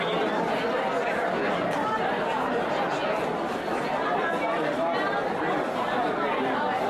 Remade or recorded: recorded